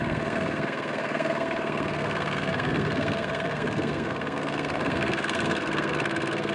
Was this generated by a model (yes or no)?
yes